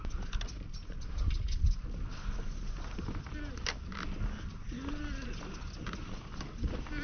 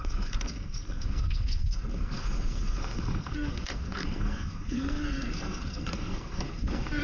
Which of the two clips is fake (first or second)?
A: second